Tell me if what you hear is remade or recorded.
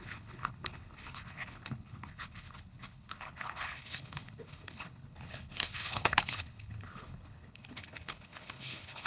remade